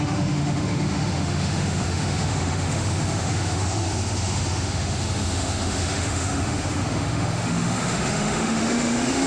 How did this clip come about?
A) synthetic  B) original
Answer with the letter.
A